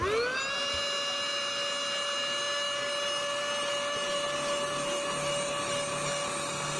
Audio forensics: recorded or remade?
recorded